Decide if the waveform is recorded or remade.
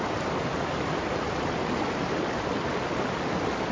recorded